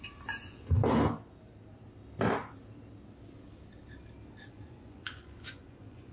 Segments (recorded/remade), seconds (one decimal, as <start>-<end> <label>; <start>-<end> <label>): 0.0-0.8 remade; 0.8-4.5 recorded; 4.5-6.1 remade